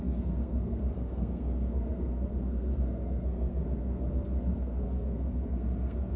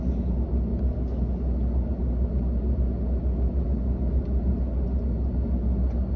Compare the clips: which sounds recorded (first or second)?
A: second